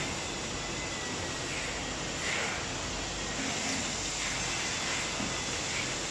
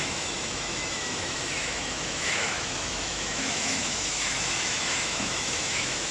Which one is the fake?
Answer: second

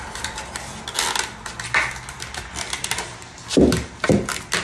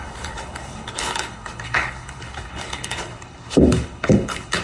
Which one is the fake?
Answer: second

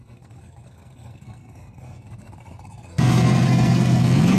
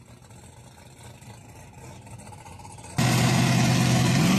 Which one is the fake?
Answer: first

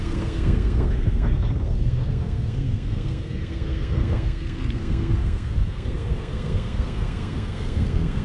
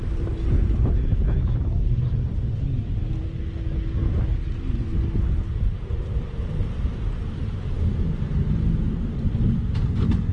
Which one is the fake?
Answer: first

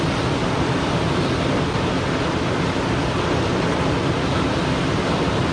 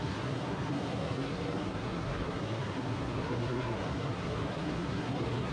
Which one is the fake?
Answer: second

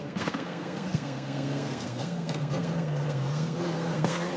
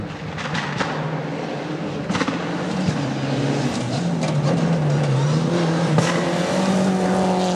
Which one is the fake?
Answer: first